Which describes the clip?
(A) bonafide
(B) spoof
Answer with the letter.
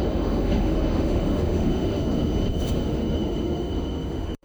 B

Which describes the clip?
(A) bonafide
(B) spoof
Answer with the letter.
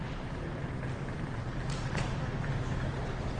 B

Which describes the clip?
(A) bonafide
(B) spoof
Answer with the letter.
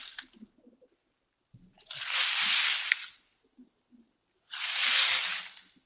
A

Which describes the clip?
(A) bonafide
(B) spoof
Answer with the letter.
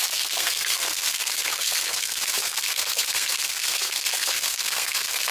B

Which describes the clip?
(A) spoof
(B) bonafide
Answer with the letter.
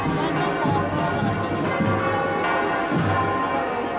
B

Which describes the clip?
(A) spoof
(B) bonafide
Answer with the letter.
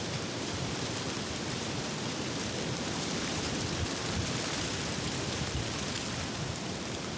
B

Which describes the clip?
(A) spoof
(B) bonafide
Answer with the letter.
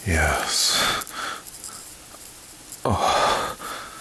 B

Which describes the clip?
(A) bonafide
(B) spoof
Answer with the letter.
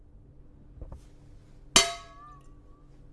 A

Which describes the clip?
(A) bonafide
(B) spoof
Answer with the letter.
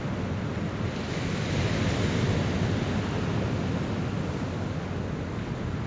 A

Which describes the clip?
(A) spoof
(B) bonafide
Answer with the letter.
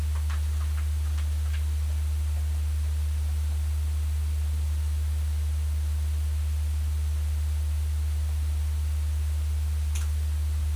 B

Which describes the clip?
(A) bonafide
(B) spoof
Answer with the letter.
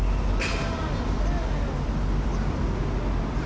A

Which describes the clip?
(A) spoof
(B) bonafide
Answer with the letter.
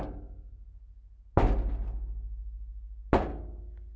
B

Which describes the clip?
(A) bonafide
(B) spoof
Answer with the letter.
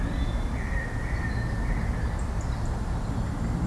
A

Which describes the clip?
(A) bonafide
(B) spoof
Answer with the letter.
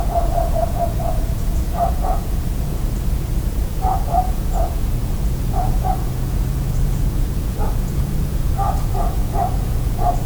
B